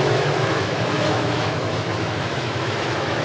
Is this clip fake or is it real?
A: fake